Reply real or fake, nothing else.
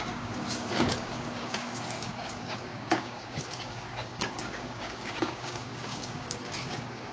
fake